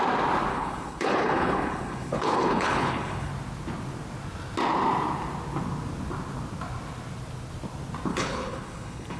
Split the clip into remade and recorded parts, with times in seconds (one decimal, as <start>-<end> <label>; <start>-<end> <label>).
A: 0.0-0.5 recorded; 0.5-3.3 remade; 3.3-8.1 recorded; 8.1-9.2 remade